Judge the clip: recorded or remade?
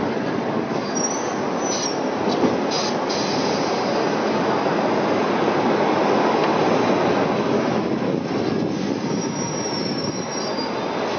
recorded